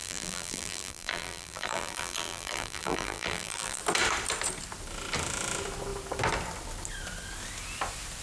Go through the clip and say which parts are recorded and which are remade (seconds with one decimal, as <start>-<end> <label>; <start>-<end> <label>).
0.0-3.8 remade; 3.8-8.2 recorded